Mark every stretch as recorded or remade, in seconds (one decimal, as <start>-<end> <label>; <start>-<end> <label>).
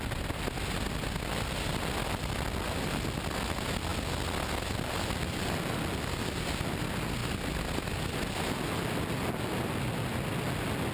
0.0-10.9 recorded